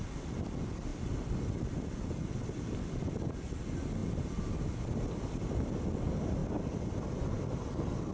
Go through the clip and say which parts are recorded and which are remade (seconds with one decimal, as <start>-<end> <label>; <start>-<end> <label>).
0.0-8.1 recorded